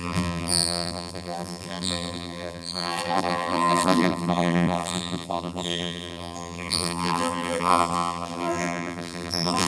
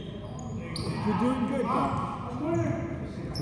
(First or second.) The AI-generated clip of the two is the first